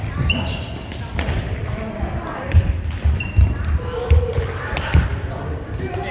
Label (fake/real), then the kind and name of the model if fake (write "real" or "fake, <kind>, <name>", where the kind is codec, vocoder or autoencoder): real